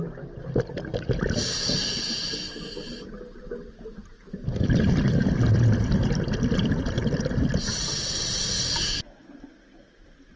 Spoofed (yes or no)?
no